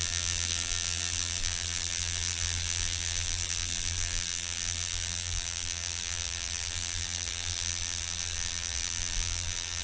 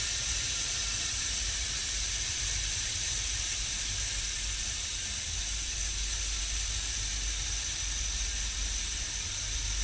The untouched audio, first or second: second